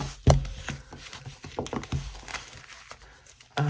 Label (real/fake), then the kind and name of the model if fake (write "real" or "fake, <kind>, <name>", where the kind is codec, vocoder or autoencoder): real